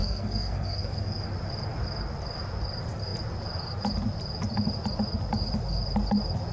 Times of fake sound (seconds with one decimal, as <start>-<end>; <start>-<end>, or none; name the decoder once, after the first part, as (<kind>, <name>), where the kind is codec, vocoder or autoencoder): 0.0-1.2 (codec, SNAC)